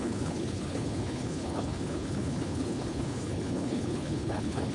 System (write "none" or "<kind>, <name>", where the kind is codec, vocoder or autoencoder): codec, HILCodec